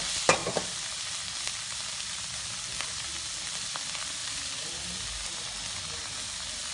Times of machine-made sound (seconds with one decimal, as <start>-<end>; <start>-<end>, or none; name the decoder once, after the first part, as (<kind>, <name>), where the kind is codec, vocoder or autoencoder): 0.4-1.3 (vocoder, BigVGAN v2); 4.2-5.0